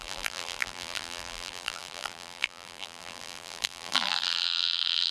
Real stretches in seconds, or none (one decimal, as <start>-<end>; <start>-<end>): none